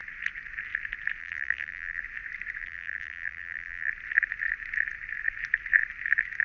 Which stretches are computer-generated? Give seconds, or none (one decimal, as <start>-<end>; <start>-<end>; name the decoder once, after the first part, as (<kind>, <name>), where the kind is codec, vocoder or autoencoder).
1.2-2.0 (vocoder, BigVGAN v2); 2.6-3.9